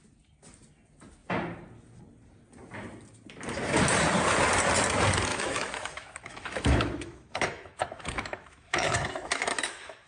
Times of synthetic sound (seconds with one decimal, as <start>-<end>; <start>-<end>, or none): 5.3-10.1